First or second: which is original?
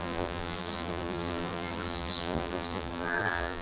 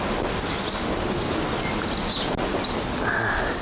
second